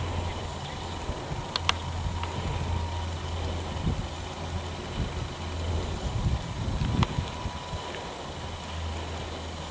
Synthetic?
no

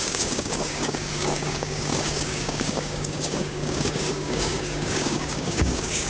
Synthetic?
yes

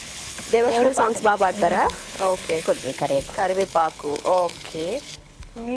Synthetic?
yes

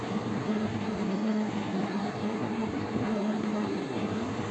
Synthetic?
yes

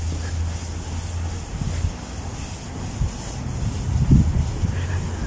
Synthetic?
no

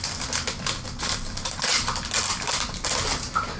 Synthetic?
no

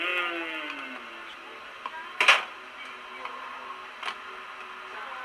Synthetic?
no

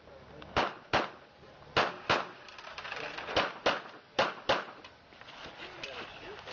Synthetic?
no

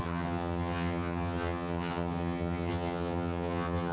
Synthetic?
yes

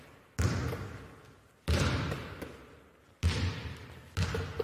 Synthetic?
no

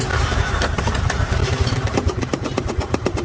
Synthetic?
yes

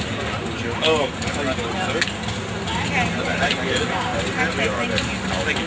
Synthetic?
no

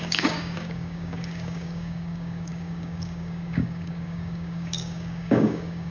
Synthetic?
yes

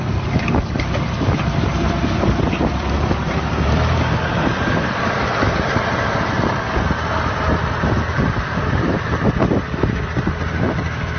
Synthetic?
yes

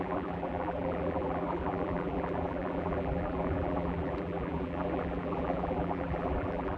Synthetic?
yes